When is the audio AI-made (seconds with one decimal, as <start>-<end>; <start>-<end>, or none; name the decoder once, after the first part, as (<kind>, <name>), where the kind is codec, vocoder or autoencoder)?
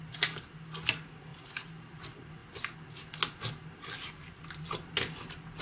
1.3-2.0 (vocoder, BigVGAN v2)